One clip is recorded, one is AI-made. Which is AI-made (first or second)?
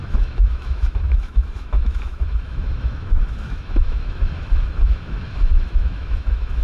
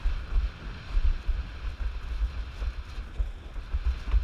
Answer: first